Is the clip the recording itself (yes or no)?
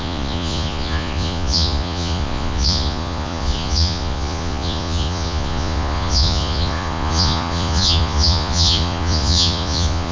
no